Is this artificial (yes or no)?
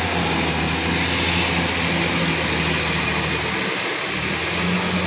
no